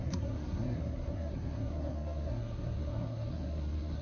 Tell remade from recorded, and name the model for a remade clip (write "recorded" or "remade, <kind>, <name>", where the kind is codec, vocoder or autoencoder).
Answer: remade, codec, SNAC